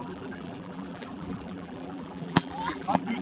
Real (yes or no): no